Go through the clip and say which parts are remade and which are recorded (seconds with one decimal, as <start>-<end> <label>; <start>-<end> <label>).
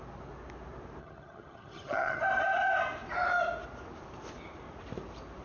0.0-1.0 recorded; 1.0-2.2 remade; 2.2-5.4 recorded